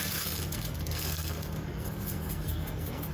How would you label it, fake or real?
fake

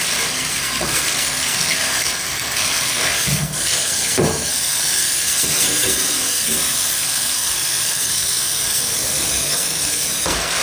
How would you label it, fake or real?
fake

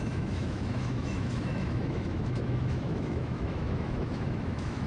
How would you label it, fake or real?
fake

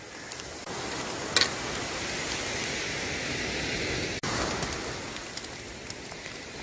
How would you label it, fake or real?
real